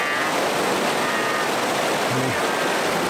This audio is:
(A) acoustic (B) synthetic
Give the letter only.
A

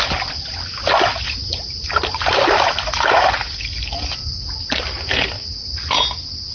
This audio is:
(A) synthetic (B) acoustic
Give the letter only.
B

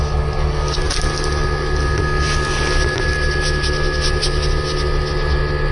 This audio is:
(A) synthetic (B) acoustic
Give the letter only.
B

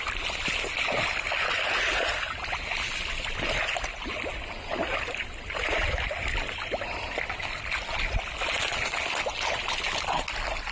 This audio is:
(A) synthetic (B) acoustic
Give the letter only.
B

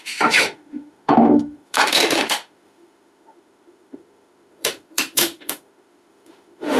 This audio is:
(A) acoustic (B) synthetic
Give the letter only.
B